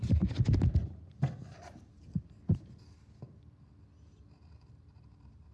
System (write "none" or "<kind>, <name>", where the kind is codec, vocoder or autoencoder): none